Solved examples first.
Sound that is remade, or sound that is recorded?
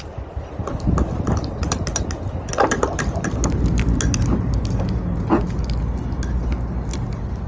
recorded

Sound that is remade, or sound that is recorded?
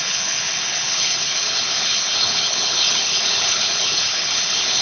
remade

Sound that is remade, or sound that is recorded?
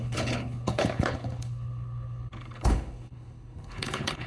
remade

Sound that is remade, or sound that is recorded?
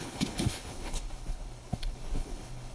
remade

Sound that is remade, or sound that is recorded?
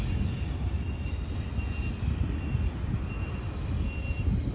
recorded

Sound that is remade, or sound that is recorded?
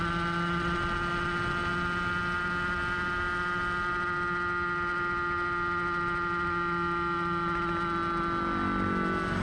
recorded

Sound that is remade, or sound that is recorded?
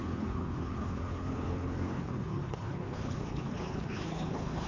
remade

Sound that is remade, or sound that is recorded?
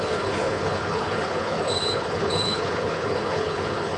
remade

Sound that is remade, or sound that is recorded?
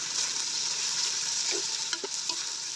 recorded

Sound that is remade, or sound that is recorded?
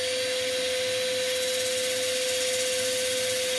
recorded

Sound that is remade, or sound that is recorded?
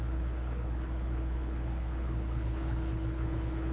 remade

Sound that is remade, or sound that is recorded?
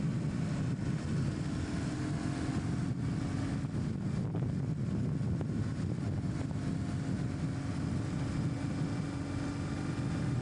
recorded